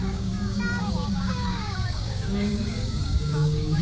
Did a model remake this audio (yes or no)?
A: yes